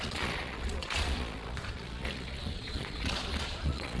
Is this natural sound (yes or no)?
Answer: no